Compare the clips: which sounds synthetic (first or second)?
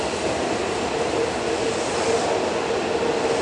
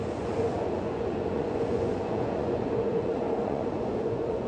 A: second